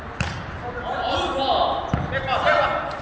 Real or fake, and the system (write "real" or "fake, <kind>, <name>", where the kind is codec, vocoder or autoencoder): real